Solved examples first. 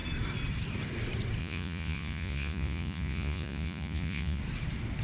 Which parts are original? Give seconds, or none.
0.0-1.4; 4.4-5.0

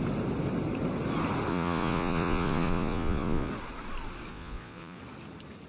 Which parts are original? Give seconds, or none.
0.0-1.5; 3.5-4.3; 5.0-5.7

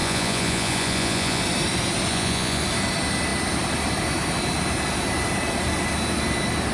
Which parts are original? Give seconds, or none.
1.4-2.1; 2.6-6.7

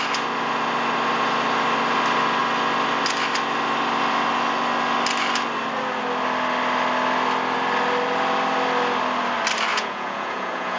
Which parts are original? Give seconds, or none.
0.0-9.7

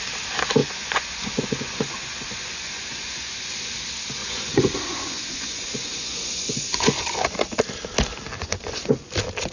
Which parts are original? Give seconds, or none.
0.0-0.6; 3.5-4.2; 7.2-8.4; 9.1-9.5

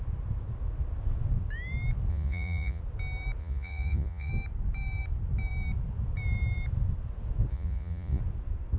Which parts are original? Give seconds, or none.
0.0-2.1; 2.8-3.4; 4.3-7.5; 8.2-8.8

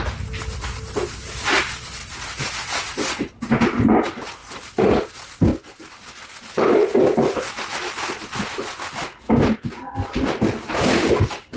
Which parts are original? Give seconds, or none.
0.0-11.6

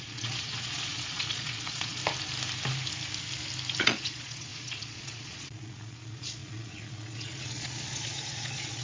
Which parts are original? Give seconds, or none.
2.0-3.8